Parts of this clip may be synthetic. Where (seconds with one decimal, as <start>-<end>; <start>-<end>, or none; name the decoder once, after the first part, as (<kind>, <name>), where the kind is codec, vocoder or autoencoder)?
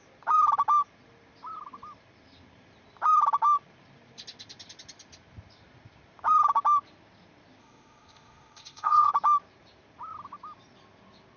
7.6-9.1 (codec, ZipCodec)